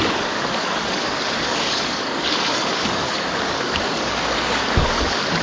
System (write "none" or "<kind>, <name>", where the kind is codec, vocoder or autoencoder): codec, DAC